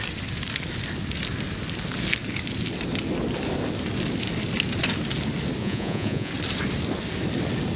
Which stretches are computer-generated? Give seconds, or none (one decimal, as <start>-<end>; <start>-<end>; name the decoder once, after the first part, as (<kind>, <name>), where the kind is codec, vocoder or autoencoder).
5.6-6.3 (vocoder, Vocos)